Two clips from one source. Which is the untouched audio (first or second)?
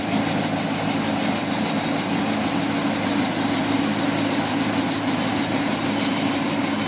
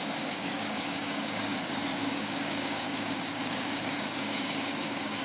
first